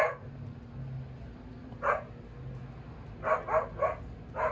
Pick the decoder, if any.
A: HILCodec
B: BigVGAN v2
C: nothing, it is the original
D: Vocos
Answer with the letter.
C